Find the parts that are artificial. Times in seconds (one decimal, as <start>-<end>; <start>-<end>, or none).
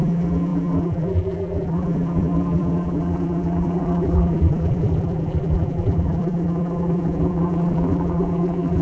0.0-8.8